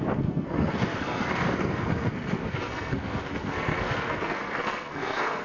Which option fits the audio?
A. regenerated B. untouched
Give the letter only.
A